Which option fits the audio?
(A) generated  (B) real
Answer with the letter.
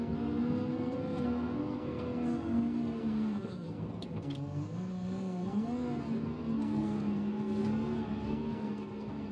A